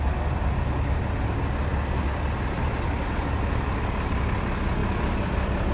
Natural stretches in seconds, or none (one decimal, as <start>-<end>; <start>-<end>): 0.0-5.7